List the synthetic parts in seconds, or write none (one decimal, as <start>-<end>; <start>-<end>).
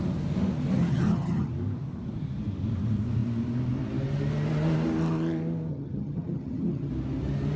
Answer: 0.8-1.5; 5.7-6.9